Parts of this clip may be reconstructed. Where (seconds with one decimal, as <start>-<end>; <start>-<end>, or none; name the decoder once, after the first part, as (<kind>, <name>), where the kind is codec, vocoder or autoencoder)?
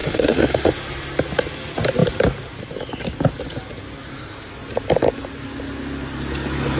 0.0-0.7 (autoencoder, DAC-VAE)